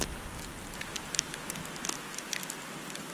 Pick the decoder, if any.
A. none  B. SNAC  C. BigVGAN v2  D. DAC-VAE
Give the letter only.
A